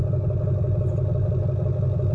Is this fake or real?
real